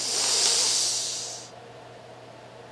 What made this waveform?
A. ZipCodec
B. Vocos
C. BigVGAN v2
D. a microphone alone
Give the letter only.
D